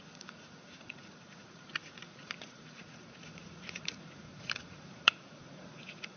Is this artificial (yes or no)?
yes